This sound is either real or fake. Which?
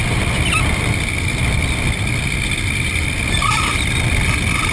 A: real